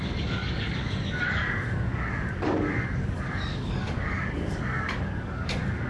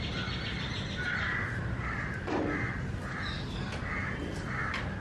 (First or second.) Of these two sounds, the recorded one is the second